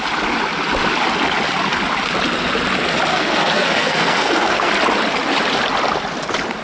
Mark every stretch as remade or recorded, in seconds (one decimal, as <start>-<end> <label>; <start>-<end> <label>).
0.0-3.1 recorded; 3.1-4.7 remade; 4.7-6.6 recorded